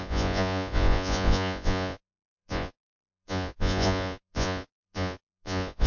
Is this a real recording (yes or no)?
no